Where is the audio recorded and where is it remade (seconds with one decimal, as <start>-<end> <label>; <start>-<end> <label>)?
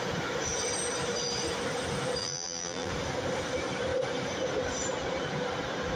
0.0-2.2 recorded; 2.2-2.9 remade; 2.9-6.0 recorded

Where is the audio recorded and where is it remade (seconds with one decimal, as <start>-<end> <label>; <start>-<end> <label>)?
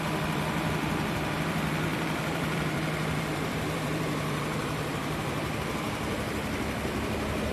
0.0-7.5 remade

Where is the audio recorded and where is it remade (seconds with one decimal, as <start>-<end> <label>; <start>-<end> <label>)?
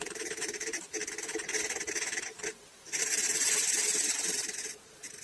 0.0-5.2 remade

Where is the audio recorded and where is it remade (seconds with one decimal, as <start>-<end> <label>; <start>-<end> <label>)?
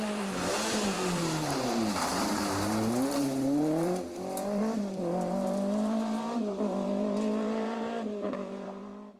0.0-9.2 remade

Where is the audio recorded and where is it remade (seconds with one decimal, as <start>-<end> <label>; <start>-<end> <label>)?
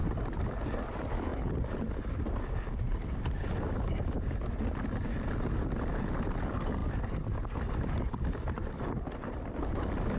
0.0-0.5 remade; 0.5-10.2 recorded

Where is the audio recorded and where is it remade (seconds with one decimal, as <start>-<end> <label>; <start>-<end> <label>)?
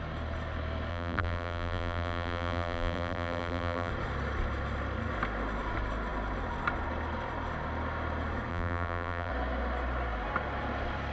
0.0-0.9 recorded; 0.9-3.9 remade; 3.9-8.5 recorded; 8.5-9.3 remade; 9.3-11.1 recorded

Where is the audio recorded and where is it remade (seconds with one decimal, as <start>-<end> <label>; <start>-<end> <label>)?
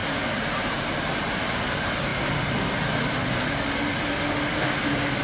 0.0-1.4 remade; 1.4-5.2 recorded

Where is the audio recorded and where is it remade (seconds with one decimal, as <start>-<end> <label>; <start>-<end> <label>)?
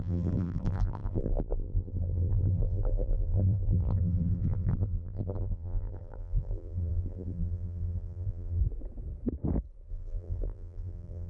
0.0-8.6 remade; 8.6-9.9 recorded; 9.9-11.3 remade